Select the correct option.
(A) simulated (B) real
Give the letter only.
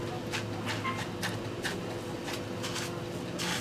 B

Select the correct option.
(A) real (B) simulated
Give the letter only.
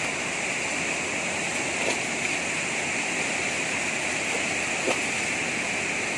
A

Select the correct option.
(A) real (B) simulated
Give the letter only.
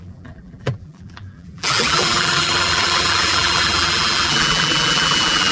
B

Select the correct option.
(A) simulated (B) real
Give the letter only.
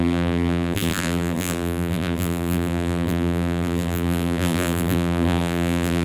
A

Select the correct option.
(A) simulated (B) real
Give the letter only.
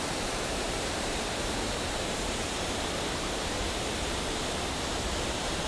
A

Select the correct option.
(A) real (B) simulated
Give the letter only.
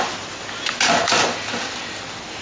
A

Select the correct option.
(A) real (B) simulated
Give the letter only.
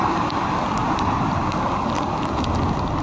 A